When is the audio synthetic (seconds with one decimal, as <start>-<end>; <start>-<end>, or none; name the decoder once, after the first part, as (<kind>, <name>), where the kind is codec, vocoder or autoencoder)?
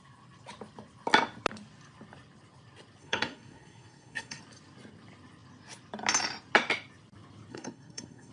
3.0-4.4 (codec, SNAC); 7.5-8.3